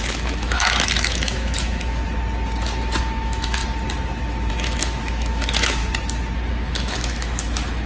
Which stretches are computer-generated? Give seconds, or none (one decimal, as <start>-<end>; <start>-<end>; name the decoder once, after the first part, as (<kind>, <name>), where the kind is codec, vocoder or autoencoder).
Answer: 0.0-2.0 (autoencoder, DAC-VAE); 3.0-3.6; 4.5-5.8; 6.5-7.9